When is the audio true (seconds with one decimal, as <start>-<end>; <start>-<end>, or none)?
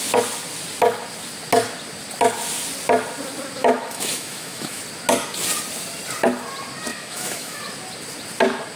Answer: 0.0-3.6; 4.8-6.9; 7.6-8.8